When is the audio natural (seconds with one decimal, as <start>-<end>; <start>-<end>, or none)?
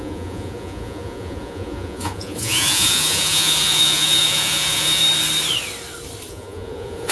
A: 5.0-6.3